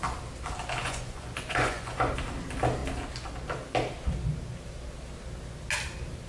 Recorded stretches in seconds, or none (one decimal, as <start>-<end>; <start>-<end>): 0.0-0.8; 2.1-6.3